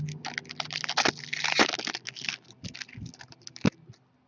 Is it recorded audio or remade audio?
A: recorded